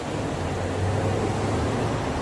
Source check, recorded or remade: recorded